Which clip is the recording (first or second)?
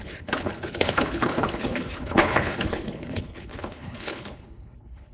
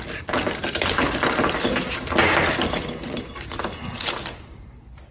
second